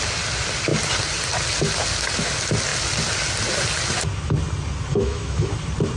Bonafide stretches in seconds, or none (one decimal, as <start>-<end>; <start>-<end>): 0.0-4.9; 5.5-6.0

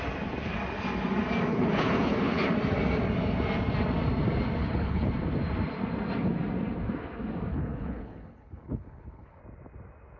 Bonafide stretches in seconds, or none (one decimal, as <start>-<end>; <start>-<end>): 0.0-1.5; 2.5-4.6; 5.1-7.5; 9.4-10.2

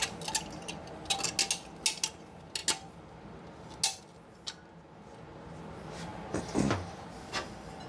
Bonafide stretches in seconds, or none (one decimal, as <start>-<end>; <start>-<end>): 0.0-7.9

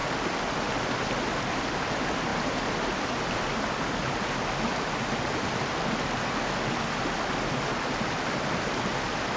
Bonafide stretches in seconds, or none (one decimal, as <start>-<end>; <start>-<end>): 0.0-9.4

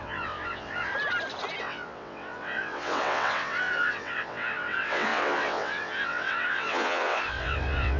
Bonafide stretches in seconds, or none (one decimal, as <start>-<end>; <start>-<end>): 0.9-1.6

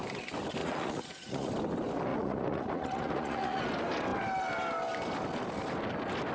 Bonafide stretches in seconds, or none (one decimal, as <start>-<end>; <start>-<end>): 0.0-0.6; 1.5-2.1; 3.6-6.3